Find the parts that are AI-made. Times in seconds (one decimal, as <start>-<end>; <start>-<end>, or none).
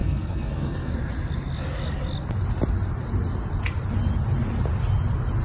0.0-0.9